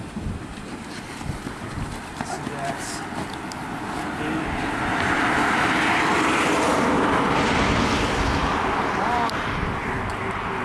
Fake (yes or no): no